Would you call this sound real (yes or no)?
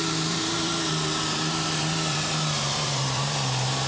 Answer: no